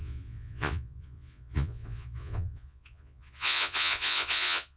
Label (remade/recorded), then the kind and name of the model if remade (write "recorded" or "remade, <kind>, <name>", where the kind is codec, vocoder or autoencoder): remade, vocoder, Vocos